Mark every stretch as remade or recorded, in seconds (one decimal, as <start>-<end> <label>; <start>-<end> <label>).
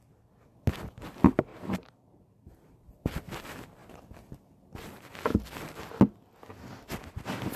0.0-1.5 recorded; 1.5-2.9 remade; 2.9-7.6 recorded